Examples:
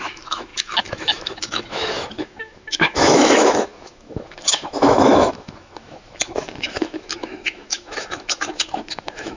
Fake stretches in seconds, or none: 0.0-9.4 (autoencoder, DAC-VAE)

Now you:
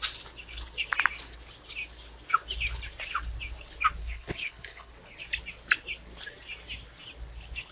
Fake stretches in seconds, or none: 4.0-4.9 (codec, HILCodec)

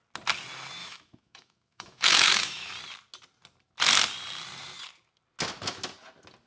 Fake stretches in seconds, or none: 0.8-2.7 (autoencoder, DAC-VAE)

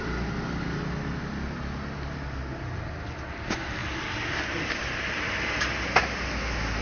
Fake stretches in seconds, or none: 3.8-5.6 (vocoder, BigVGAN v2)

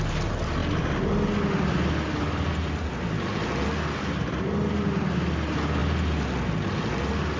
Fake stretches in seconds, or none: none